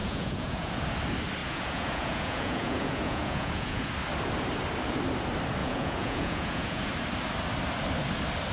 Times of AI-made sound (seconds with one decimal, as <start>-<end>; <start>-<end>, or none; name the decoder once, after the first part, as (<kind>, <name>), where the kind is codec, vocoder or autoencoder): 0.0-0.9 (vocoder, Vocos); 1.4-3.9; 5.6-6.8